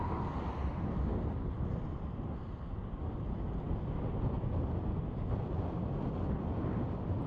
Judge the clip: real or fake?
real